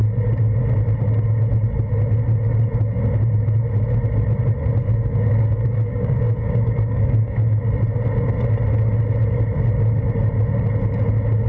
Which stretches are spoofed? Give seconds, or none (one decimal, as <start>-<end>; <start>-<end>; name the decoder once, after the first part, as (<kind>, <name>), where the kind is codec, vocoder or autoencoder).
4.8-7.6 (codec, DAC)